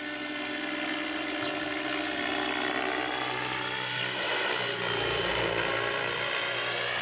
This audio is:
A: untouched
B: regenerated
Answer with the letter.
A